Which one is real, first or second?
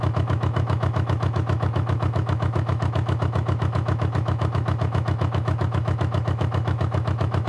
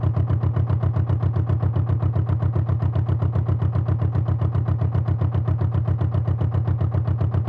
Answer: second